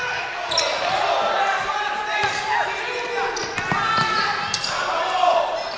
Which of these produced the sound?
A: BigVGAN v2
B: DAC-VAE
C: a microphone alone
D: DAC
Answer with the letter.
C